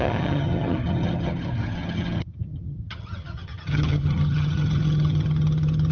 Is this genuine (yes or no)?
no